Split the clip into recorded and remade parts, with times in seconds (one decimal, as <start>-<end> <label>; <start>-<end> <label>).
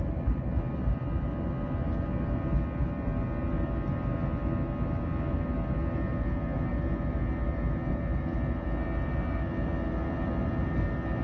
0.0-11.2 recorded